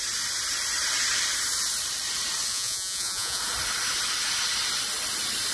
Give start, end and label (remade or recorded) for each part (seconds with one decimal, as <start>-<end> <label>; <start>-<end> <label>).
0.0-2.5 recorded; 2.5-3.4 remade; 3.4-5.5 recorded